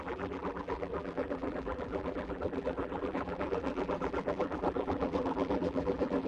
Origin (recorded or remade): remade